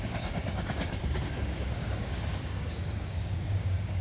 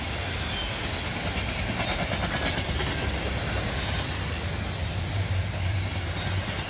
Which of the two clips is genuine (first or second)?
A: second